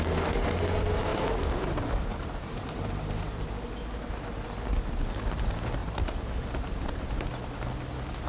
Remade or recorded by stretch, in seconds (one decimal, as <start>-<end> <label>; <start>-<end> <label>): 0.0-1.1 recorded; 1.1-3.4 remade; 3.4-5.8 recorded; 5.8-7.3 remade; 7.3-8.3 recorded